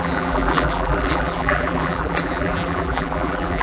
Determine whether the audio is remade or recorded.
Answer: remade